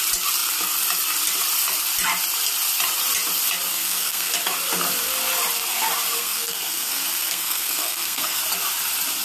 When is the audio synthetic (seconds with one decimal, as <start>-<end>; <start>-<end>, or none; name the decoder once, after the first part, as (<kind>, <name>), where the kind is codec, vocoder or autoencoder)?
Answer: 3.7-4.3 (codec, SNAC); 6.2-8.4